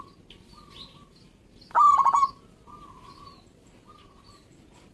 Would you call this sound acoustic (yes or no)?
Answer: yes